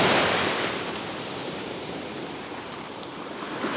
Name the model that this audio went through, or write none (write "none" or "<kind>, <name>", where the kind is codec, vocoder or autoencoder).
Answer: vocoder, BigVGAN v2